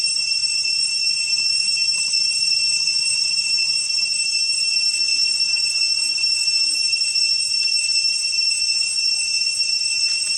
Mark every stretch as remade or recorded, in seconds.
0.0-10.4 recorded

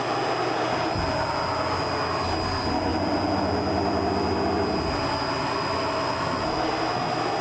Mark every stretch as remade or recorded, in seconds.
0.0-7.4 recorded

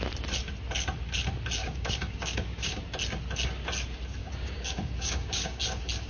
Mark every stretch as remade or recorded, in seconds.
0.0-1.6 recorded; 1.6-2.8 remade; 2.8-4.2 recorded; 4.2-5.6 remade; 5.6-6.1 recorded

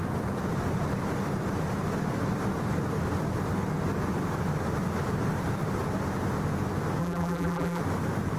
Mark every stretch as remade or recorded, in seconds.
0.0-7.0 recorded; 7.0-7.8 remade; 7.8-8.4 recorded

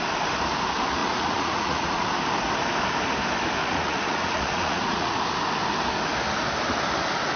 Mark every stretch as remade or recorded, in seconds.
0.0-1.0 recorded; 1.0-2.1 remade; 2.1-3.6 recorded; 3.6-5.2 remade; 5.2-7.4 recorded

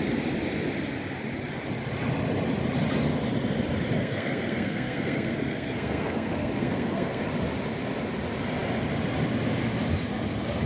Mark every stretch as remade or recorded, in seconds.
0.0-4.0 recorded; 4.0-7.2 remade; 7.2-10.7 recorded

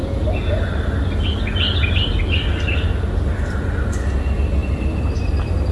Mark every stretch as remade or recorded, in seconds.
0.0-5.7 recorded

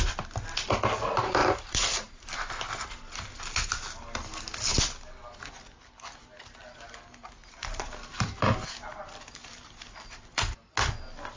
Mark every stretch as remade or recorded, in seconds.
0.0-1.4 recorded; 1.4-2.5 remade; 2.5-7.4 recorded; 7.4-8.5 remade; 8.5-11.4 recorded